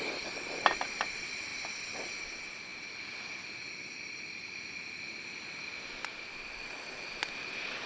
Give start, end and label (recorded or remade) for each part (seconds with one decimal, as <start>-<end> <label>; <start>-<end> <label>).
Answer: 0.0-7.9 recorded

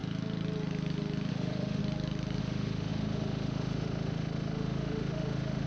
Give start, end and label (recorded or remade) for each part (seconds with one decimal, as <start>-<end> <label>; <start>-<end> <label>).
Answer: 0.0-1.3 recorded; 1.3-1.8 remade; 1.8-2.4 recorded; 2.4-5.7 remade

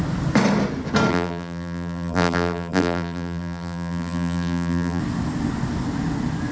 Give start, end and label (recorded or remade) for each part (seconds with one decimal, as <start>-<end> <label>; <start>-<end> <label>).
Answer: 0.0-1.1 recorded; 1.1-5.0 remade; 5.0-6.5 recorded

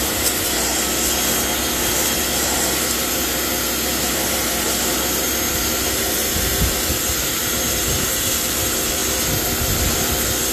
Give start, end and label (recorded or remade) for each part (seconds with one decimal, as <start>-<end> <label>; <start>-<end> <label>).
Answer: 0.0-0.7 remade; 0.7-2.2 recorded; 2.2-9.0 remade; 9.0-10.5 recorded

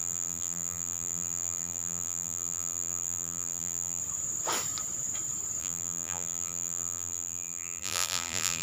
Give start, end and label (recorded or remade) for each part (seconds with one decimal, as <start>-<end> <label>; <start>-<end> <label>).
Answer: 0.0-4.0 remade; 4.0-5.6 recorded; 5.6-8.6 remade

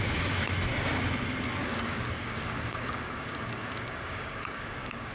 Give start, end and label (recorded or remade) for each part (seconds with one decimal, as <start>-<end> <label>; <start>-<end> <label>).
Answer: 0.0-1.6 recorded; 1.6-5.1 remade

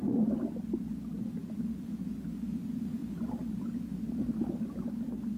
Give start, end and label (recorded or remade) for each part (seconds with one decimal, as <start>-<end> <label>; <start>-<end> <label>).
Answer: 0.0-3.0 recorded; 3.0-4.7 remade; 4.7-5.4 recorded

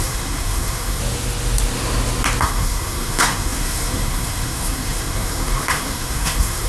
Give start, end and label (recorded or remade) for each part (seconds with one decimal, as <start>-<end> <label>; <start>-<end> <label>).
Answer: 0.0-1.0 remade; 1.0-2.4 recorded; 2.4-6.7 remade